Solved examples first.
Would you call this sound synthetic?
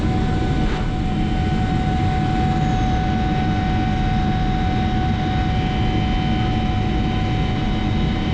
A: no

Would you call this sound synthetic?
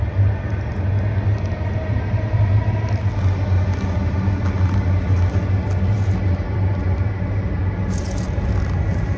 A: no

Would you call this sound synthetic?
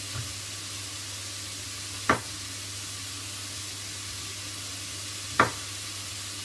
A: no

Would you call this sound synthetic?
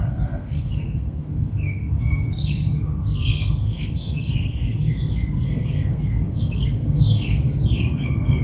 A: yes